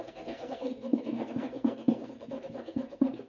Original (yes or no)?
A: no